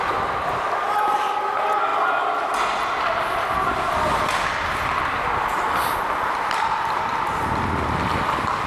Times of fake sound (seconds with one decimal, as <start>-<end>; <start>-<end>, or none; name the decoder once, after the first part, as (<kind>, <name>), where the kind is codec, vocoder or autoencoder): none